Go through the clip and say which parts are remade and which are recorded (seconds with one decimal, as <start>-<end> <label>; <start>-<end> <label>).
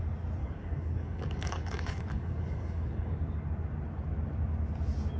0.0-0.4 recorded; 0.4-3.2 remade; 3.2-5.2 recorded